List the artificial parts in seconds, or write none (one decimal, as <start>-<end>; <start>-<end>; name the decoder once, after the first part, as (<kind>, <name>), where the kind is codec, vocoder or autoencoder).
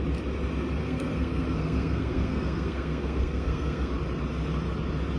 0.8-3.9 (codec, SNAC)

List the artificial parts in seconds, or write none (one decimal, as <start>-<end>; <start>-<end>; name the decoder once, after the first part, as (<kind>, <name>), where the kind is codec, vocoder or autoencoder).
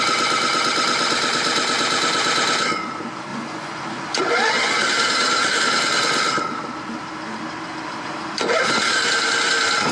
3.3-4.2 (vocoder, Vocos)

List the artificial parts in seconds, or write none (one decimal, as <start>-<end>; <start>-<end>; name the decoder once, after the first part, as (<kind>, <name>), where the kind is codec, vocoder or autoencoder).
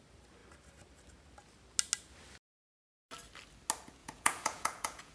4.0-5.1 (vocoder, Vocos)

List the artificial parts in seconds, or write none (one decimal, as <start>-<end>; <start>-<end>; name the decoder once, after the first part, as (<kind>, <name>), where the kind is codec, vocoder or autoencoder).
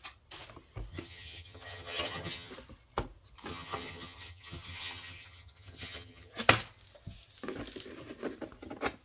0.9-2.5 (vocoder, HiFi-GAN); 3.5-6.3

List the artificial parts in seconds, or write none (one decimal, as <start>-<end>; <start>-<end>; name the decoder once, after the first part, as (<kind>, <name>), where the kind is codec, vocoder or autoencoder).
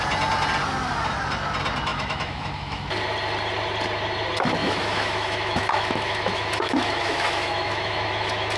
1.9-2.9 (autoencoder, DAC-VAE); 4.6-8.6